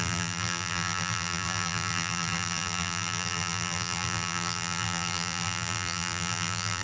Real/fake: fake